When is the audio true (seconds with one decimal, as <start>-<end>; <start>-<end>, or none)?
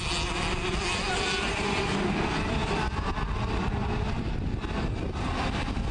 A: 0.0-5.9